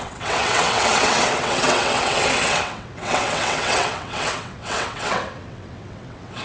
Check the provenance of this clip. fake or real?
fake